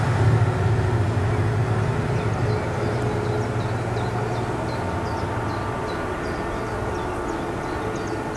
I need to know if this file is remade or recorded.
recorded